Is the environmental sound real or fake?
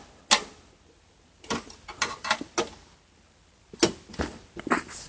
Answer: real